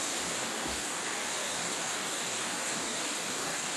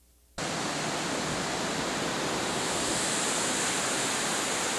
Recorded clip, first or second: second